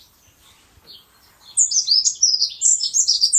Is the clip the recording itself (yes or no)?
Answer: yes